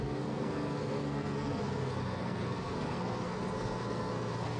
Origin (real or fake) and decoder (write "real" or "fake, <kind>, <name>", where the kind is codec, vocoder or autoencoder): fake, codec, SNAC